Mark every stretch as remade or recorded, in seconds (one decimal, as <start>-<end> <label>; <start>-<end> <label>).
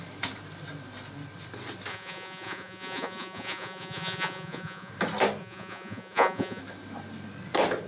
0.0-1.9 recorded; 1.9-4.9 remade; 4.9-5.4 recorded; 5.4-6.6 remade; 6.6-7.9 recorded